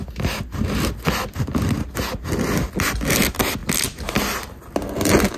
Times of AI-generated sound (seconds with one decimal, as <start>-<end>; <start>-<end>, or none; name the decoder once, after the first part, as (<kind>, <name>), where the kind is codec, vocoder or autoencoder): none